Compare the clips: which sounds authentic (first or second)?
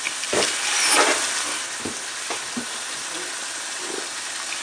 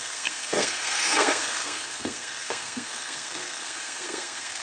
first